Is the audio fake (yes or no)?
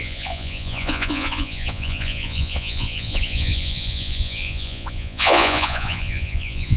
yes